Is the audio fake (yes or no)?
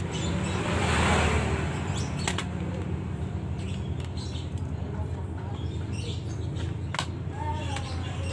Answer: no